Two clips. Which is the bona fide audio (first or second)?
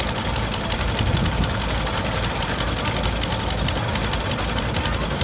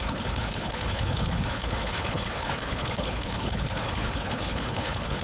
first